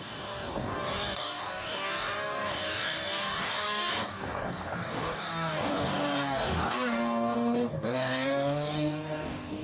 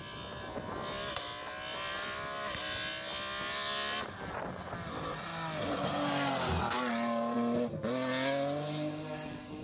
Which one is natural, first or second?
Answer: second